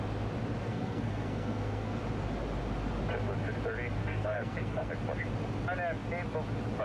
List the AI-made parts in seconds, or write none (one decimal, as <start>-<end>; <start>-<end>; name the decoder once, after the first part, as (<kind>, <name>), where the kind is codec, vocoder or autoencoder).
0.6-2.0 (codec, SNAC); 4.0-4.9